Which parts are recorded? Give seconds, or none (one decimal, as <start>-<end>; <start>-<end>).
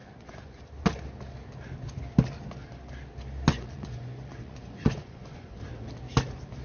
0.6-3.5; 5.6-6.6